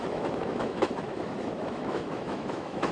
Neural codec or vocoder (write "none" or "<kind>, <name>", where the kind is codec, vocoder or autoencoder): autoencoder, DAC-VAE